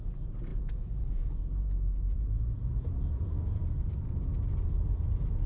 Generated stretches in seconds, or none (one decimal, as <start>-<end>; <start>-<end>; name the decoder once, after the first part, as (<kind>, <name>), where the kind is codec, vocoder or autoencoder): 0.5-3.8 (vocoder, Vocos)